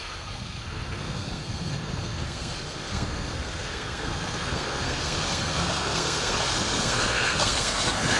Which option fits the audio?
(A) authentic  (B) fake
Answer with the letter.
B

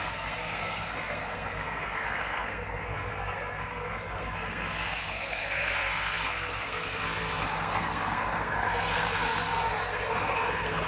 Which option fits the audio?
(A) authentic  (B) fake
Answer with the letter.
B